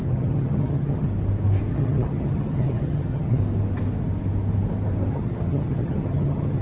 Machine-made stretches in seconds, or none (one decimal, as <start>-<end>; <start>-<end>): 0.0-1.1; 1.7-3.4; 5.1-6.6